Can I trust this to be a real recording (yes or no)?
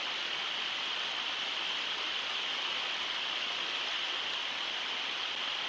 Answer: yes